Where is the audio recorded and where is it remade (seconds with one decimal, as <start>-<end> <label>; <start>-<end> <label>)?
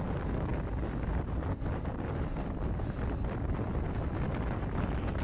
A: 0.0-5.2 recorded